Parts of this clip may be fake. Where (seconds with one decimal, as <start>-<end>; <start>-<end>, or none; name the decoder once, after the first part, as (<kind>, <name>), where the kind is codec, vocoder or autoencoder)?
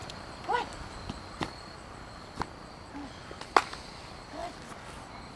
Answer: none